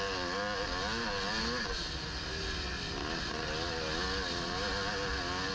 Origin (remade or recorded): recorded